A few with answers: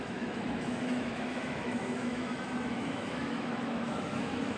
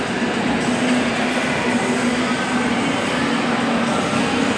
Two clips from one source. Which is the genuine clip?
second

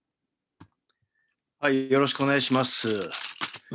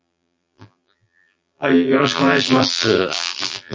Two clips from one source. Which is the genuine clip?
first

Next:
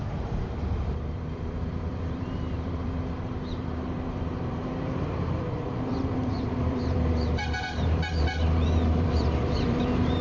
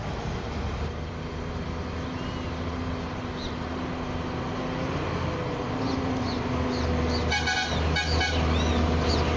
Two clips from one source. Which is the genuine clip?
second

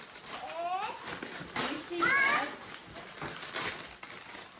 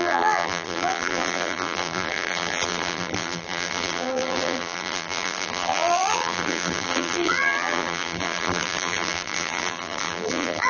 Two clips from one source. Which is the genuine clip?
first